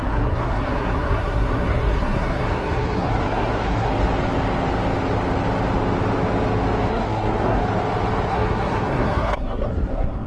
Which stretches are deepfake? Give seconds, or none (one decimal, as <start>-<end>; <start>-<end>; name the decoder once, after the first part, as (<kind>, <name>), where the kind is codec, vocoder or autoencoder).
0.0-3.9 (codec, SNAC); 6.9-7.6; 8.3-10.3